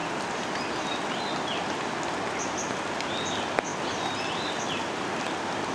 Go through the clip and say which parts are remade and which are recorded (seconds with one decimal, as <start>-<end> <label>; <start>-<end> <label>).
0.0-0.8 remade; 0.8-3.7 recorded; 3.7-5.2 remade; 5.2-5.7 recorded